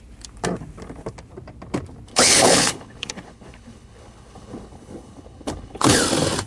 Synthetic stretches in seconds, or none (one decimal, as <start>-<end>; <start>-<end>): 2.1-6.0